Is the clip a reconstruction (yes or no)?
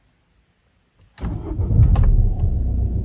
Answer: no